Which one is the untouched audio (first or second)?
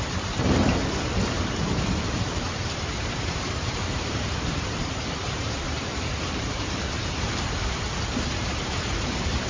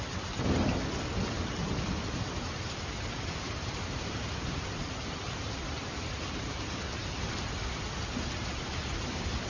second